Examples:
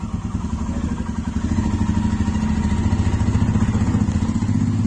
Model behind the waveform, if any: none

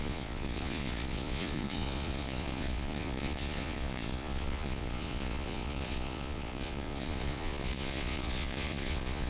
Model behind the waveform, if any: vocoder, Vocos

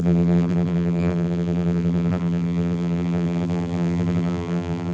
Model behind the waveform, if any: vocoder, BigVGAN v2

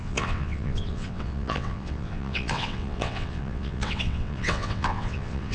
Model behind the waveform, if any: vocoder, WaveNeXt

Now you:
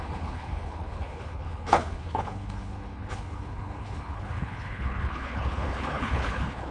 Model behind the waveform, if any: codec, HILCodec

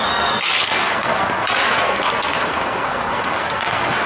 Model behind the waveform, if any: codec, SNAC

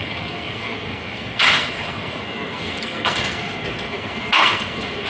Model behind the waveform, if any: codec, SNAC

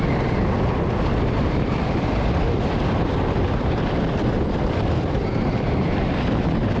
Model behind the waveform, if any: vocoder, BigVGAN v2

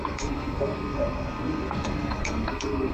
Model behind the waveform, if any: codec, SNAC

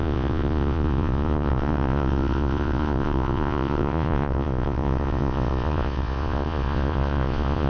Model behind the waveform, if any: vocoder, Vocos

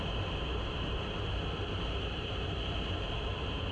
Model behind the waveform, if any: vocoder, BigVGAN v2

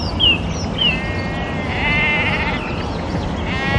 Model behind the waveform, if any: none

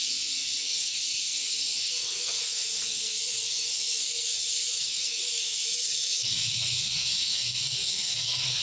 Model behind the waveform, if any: codec, SNAC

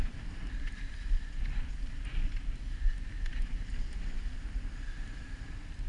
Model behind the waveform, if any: none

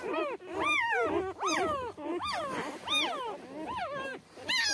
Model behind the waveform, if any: none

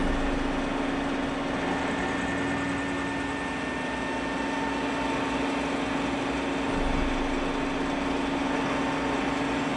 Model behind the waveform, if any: none